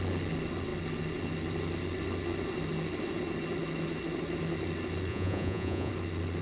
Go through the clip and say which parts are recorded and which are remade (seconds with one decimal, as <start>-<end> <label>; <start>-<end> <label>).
0.0-5.1 recorded; 5.1-5.9 remade; 5.9-6.4 recorded